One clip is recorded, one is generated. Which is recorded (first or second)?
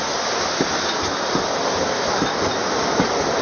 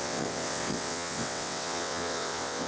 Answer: first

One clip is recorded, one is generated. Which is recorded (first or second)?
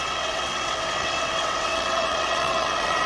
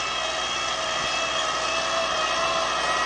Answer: second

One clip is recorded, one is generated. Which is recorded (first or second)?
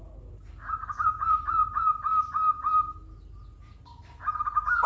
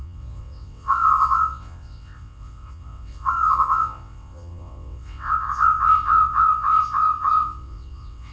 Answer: first